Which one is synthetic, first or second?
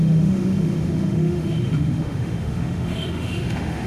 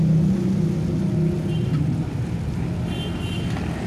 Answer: first